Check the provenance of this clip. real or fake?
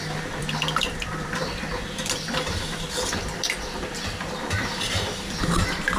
fake